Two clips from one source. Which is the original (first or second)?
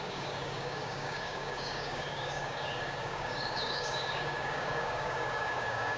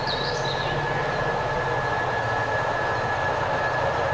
second